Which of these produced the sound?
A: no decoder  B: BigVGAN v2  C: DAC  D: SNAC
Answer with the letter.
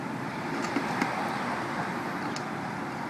A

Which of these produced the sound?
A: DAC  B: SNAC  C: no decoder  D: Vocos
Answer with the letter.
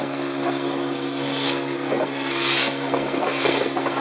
B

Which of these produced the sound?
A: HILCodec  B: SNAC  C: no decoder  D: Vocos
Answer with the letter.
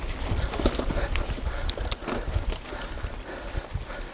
C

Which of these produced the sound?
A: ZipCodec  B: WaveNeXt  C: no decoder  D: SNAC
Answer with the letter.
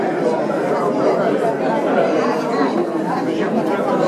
C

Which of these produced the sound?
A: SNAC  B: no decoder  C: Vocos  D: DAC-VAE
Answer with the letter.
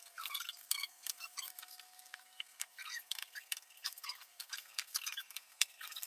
A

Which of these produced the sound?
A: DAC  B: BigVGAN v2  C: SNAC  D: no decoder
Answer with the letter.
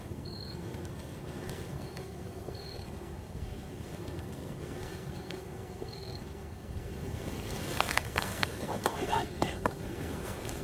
C